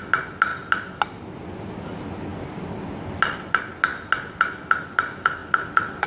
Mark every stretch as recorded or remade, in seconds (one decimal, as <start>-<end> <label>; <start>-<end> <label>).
0.0-6.1 recorded